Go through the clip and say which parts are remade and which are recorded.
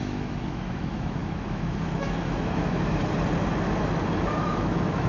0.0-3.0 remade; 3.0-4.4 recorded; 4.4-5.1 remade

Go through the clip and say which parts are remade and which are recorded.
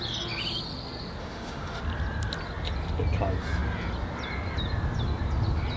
0.0-1.2 recorded; 1.2-1.8 remade; 1.8-5.8 recorded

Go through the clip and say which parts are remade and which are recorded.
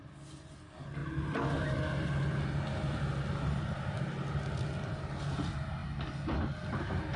0.0-7.2 recorded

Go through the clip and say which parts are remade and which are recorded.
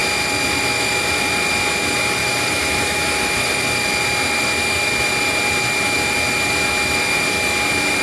0.0-2.2 recorded; 2.2-3.5 remade; 3.5-8.0 recorded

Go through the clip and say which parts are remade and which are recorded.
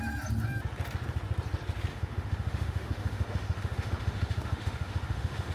0.0-1.9 recorded; 1.9-5.5 remade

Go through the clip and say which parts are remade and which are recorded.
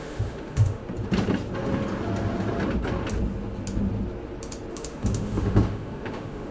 0.0-0.8 remade; 0.8-4.7 recorded; 4.7-6.5 remade